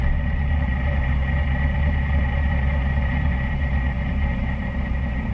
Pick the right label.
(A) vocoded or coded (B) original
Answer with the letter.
A